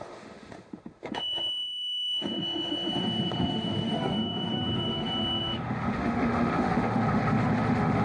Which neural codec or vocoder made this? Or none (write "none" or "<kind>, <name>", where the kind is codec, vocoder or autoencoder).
autoencoder, DAC-VAE